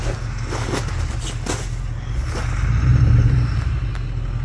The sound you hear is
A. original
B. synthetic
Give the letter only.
A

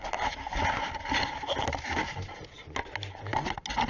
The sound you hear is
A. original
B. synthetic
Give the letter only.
A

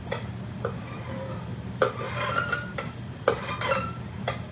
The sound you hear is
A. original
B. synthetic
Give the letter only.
A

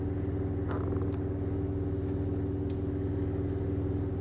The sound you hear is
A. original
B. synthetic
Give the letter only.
A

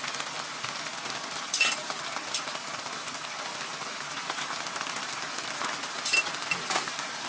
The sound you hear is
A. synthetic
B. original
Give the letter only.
B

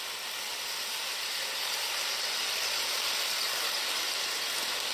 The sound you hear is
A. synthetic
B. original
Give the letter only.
B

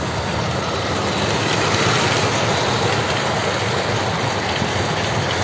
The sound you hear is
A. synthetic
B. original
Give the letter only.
B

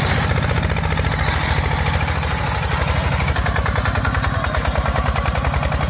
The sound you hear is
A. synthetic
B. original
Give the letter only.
B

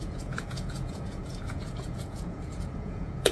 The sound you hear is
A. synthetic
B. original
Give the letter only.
A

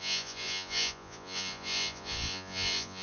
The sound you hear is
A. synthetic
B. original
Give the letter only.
A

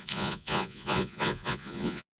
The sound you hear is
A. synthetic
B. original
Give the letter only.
A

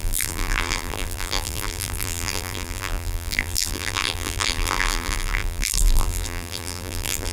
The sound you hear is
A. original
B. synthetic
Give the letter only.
B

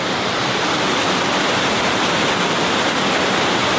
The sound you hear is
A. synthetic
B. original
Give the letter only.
A